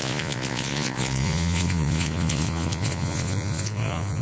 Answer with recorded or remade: remade